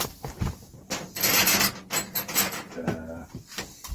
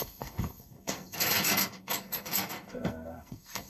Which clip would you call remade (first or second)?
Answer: second